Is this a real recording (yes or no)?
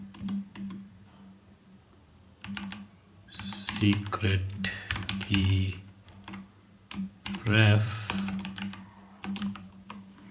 no